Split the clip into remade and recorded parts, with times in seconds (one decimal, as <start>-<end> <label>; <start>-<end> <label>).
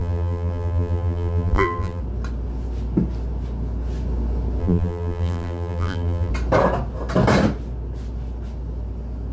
0.0-2.0 remade; 2.0-4.6 recorded; 4.6-6.3 remade; 6.3-9.3 recorded